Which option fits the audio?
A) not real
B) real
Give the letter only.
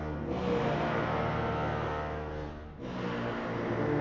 B